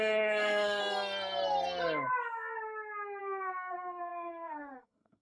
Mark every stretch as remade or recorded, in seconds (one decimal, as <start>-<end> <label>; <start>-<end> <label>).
0.0-0.8 remade; 0.8-3.2 recorded; 3.2-5.2 remade